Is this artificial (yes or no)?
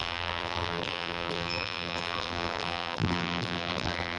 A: yes